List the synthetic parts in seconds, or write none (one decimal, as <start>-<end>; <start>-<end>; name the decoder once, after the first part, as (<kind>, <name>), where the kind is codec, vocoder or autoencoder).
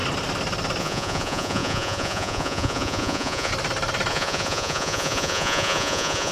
0.8-3.5 (vocoder, Vocos); 4.1-6.3